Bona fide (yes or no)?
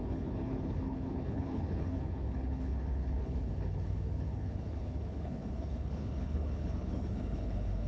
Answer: no